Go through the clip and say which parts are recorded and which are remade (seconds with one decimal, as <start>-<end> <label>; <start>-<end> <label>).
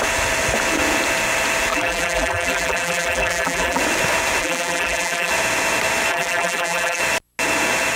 0.0-1.7 recorded; 1.7-3.8 remade; 3.8-4.4 recorded; 4.4-5.3 remade; 5.3-6.1 recorded; 6.1-7.0 remade; 7.0-8.0 recorded